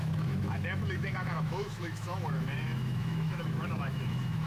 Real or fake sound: fake